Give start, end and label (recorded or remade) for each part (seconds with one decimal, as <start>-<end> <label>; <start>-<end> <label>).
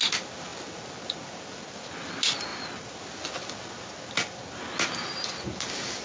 0.0-6.0 recorded